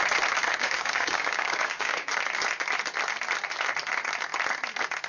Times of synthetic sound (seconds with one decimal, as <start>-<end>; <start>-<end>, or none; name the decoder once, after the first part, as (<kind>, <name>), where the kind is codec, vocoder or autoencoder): 0.5-2.1 (codec, DAC)